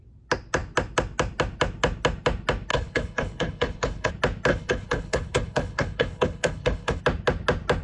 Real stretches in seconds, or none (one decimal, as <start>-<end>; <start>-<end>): 0.0-2.7; 4.1-4.5; 7.0-7.8